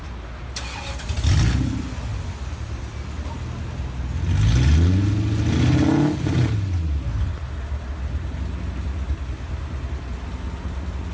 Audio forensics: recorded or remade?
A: recorded